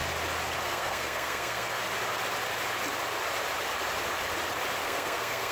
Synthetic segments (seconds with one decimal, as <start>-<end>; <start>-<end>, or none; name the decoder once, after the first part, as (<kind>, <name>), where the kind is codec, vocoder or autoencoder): 0.6-1.8 (codec, SNAC); 4.8-5.5